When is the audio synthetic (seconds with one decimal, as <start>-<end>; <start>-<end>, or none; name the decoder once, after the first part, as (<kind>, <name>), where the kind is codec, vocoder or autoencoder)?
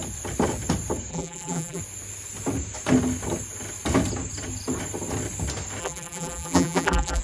1.1-1.8 (vocoder, BigVGAN v2); 5.8-7.2